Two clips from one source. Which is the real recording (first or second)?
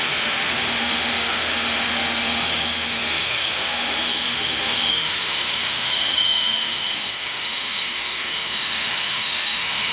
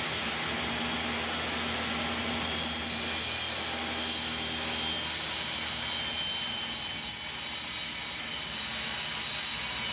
second